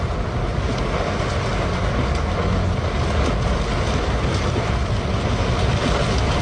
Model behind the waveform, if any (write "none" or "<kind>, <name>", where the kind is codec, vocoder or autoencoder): none